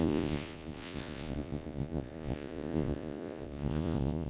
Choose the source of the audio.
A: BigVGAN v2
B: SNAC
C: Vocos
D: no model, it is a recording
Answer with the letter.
C